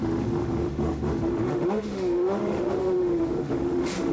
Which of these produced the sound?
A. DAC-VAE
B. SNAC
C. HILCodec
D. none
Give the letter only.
A